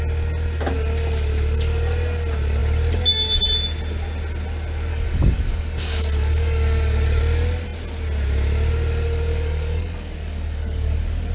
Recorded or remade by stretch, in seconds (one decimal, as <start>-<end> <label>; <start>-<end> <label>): 0.0-4.9 recorded; 4.9-7.2 remade; 7.2-9.3 recorded; 9.3-11.3 remade